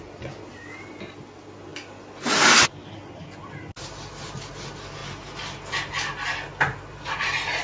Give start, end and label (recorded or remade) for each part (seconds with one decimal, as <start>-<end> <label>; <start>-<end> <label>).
0.0-7.6 recorded